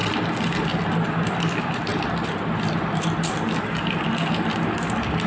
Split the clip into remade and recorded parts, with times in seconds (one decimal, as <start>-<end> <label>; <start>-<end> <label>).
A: 0.0-5.3 recorded